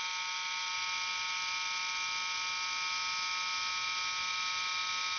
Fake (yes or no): no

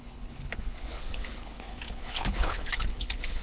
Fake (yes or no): yes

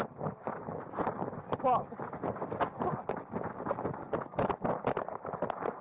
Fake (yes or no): no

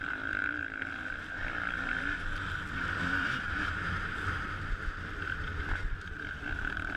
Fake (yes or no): no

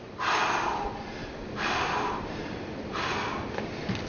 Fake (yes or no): no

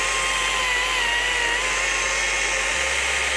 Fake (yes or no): no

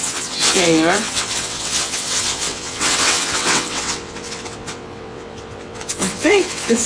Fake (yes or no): yes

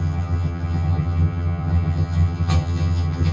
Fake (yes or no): yes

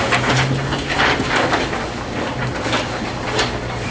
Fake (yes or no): no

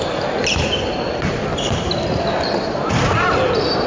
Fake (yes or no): no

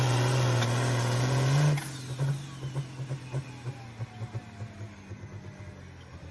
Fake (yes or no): no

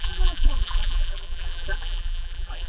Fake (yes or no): yes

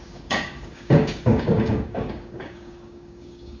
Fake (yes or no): yes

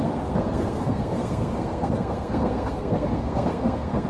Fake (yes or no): yes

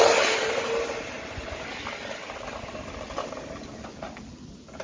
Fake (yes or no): no